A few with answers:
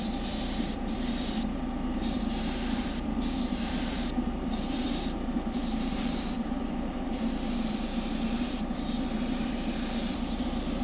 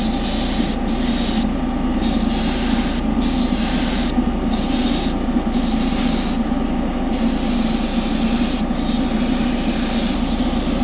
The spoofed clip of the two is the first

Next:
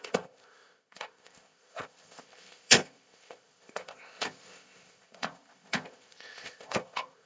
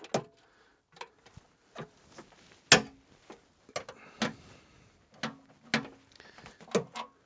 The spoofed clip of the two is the first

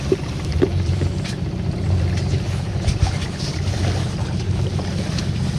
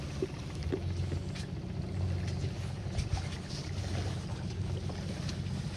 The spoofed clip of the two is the first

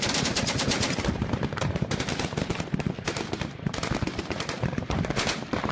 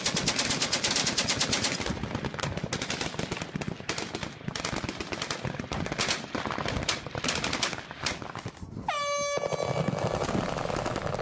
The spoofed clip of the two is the first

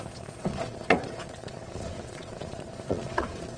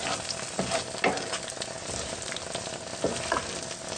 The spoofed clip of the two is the first